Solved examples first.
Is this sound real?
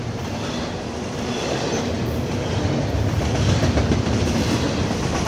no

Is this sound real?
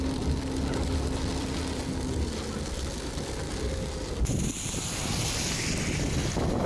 yes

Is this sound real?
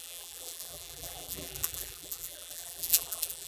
no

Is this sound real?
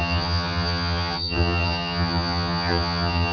no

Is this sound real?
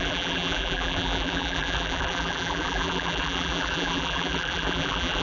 no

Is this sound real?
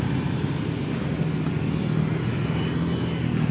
yes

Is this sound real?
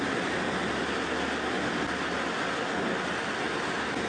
yes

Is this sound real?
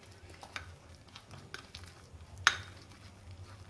yes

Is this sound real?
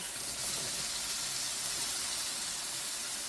yes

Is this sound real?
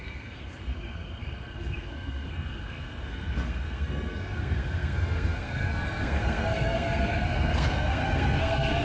no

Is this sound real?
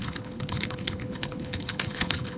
no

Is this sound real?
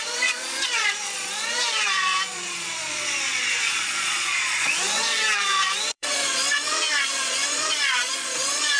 no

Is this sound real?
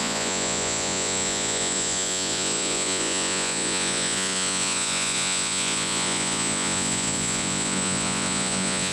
no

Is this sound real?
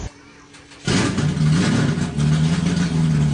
yes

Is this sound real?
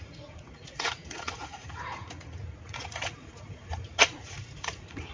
no